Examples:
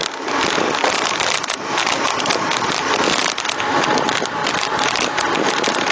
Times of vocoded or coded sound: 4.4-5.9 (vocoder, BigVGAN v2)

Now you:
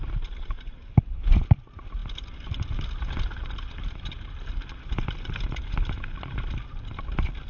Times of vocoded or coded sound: 0.0-7.5 (vocoder, BigVGAN v2)

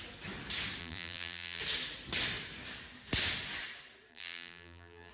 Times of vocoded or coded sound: 0.8-1.6 (vocoder, BigVGAN v2); 4.1-5.1

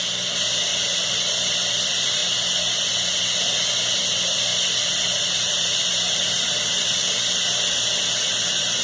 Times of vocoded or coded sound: 0.7-1.7 (vocoder, BigVGAN v2); 4.5-5.4

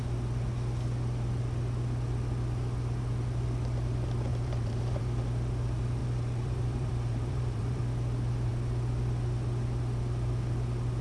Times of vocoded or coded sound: 4.3-5.0 (vocoder, BigVGAN v2); 6.0-7.8

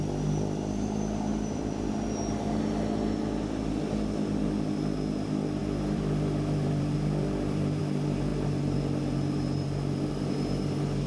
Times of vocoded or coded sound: 1.3-1.9 (vocoder, BigVGAN v2); 5.6-7.8

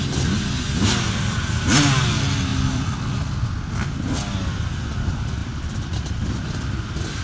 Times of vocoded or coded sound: 2.5-3.2 (vocoder, BigVGAN v2); 5.4-7.2

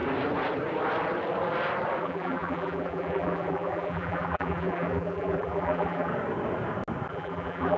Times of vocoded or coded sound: 2.0-6.1 (vocoder, BigVGAN v2); 7.1-7.8